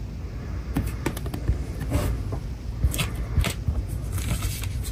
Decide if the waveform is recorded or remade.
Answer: recorded